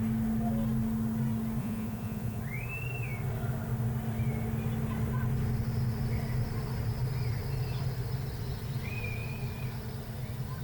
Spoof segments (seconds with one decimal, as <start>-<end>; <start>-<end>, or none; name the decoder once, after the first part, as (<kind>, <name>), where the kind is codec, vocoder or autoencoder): 1.6-2.4 (vocoder, Vocos)